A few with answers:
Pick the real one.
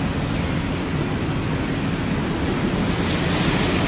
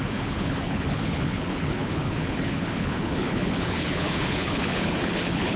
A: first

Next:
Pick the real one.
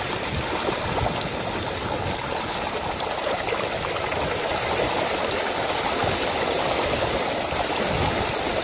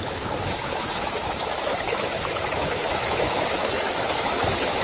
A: first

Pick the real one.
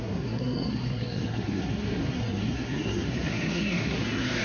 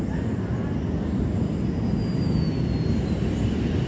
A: second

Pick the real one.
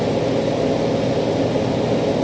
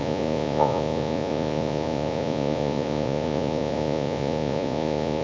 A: first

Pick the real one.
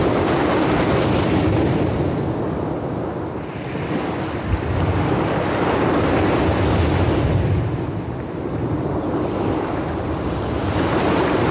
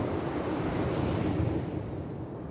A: first